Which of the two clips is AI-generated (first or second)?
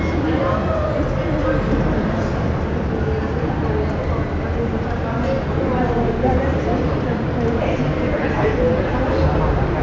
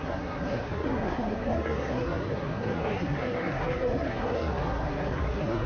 second